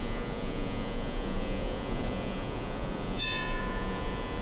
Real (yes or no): no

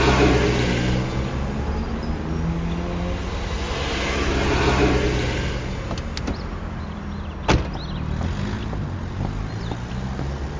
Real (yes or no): yes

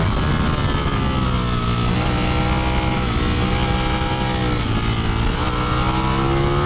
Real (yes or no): yes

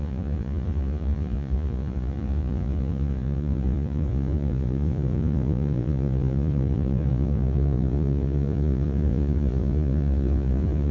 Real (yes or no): no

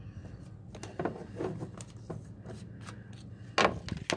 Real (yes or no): yes